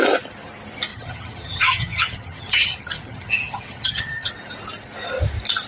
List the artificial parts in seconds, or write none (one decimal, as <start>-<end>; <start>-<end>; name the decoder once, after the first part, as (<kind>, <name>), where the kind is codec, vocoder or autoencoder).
0.9-4.3 (vocoder, HiFi-GAN)